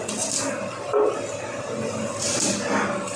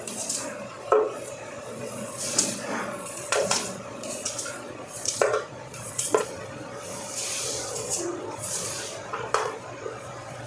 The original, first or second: first